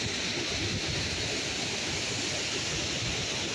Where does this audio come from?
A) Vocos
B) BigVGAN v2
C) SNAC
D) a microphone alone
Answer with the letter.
D